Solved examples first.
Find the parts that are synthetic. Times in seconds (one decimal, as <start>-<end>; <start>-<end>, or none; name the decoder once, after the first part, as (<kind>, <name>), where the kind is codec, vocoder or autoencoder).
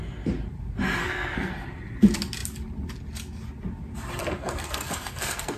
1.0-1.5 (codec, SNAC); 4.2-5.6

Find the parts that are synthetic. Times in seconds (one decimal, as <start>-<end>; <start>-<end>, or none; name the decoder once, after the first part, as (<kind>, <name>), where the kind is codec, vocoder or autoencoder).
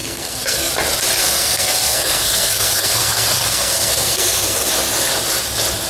0.0-0.7 (codec, SNAC); 1.2-4.7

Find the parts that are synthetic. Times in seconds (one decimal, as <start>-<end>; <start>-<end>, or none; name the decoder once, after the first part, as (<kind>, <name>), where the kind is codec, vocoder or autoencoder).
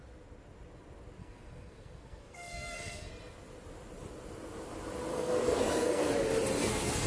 1.2-3.1 (codec, SNAC); 5.1-6.1; 6.6-7.1